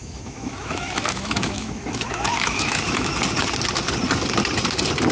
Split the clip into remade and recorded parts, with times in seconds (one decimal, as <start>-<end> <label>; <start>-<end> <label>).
0.0-3.1 remade; 3.1-5.1 recorded

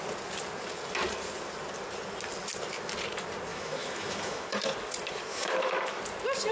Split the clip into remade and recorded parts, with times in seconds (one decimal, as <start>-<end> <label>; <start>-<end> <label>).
0.0-3.5 recorded; 3.5-4.6 remade; 4.6-5.3 recorded; 5.3-6.0 remade; 6.0-6.5 recorded

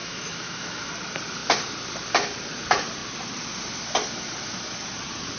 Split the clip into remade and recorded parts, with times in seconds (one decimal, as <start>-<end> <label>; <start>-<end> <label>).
0.0-0.9 remade; 0.9-5.4 recorded

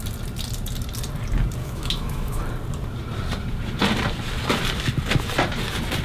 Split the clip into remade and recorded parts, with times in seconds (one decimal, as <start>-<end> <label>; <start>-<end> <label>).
0.0-1.6 recorded; 1.6-2.4 remade; 2.4-6.0 recorded

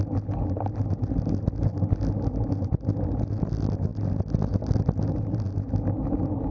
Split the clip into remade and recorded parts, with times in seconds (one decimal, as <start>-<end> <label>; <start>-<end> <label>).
0.0-6.5 recorded

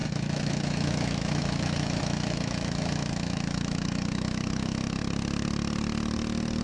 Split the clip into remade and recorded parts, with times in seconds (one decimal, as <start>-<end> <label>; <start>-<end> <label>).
0.0-5.0 remade; 5.0-6.6 recorded

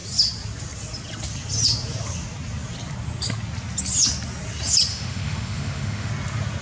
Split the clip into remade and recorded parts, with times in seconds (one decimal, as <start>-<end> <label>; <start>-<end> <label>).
0.0-4.9 recorded; 4.9-6.1 remade; 6.1-6.6 recorded

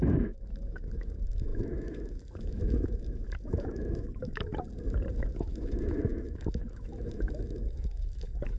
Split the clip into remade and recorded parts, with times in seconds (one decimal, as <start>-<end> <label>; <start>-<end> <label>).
0.0-4.5 remade; 4.5-5.3 recorded; 5.3-8.6 remade